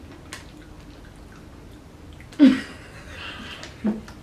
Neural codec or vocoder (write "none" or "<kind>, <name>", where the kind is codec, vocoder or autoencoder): none